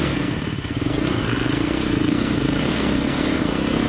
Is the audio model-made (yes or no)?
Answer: yes